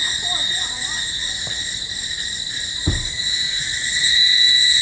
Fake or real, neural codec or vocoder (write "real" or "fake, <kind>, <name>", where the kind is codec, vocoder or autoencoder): real